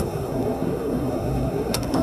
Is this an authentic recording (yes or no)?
no